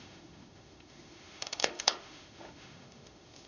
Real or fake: fake